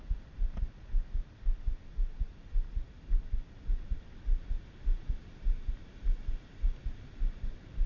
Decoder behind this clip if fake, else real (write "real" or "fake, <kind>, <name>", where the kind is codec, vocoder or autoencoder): real